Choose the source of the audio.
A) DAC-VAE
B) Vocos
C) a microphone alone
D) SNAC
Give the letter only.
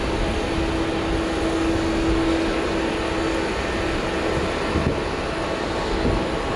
C